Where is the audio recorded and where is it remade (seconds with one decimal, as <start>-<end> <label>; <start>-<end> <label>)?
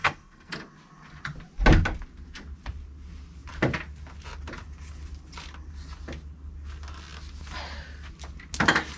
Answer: 0.0-0.5 remade; 0.5-9.0 recorded